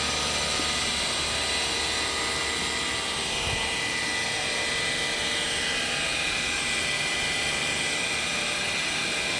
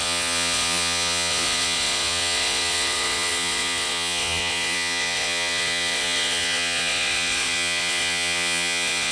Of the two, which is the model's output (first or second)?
second